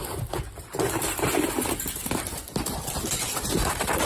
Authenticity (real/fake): real